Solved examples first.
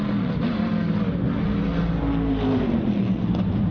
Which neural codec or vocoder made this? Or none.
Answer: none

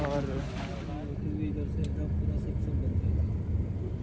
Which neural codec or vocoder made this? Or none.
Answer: none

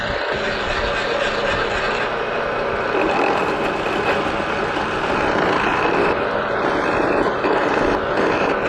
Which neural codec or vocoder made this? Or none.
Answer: none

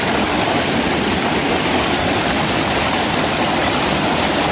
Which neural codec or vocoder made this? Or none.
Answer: none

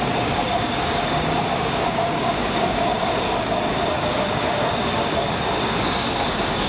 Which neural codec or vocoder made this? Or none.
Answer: codec, DAC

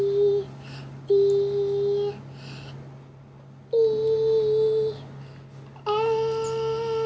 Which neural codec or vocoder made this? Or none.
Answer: none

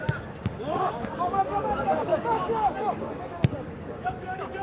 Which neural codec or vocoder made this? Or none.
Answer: codec, DAC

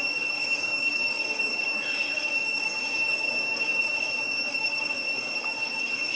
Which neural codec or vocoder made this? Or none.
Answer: codec, DAC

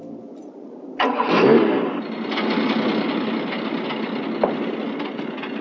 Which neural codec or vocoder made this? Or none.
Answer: none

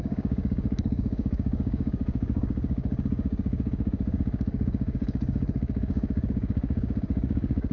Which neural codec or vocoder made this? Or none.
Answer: codec, DAC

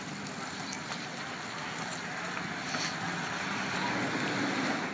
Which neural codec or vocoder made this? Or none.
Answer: none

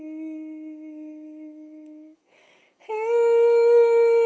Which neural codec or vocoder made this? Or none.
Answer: codec, DAC